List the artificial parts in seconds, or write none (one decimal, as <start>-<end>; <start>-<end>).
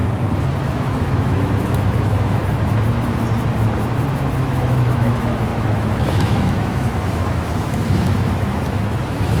0.6-2.4; 4.4-9.4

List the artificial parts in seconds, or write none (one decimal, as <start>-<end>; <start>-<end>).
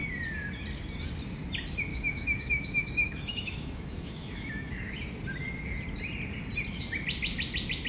1.9-5.0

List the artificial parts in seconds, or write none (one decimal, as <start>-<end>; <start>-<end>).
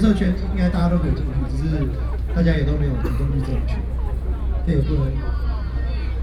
none